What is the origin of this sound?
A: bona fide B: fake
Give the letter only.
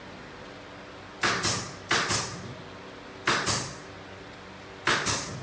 A